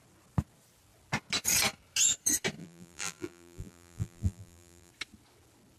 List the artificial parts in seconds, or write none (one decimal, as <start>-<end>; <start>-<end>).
2.6-4.9